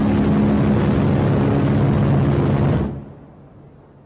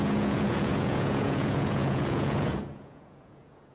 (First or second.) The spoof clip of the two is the second